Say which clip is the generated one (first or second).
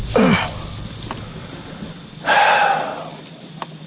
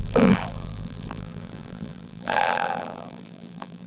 second